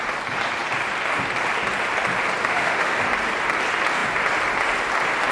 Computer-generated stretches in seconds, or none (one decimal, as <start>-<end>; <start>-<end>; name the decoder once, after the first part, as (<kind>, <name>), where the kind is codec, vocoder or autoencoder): 2.4-3.0 (autoencoder, DAC-VAE)